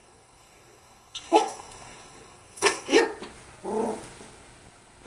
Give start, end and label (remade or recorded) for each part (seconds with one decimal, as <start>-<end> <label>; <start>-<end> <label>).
0.0-3.0 remade; 3.0-5.1 recorded